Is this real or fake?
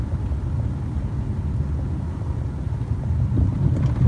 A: real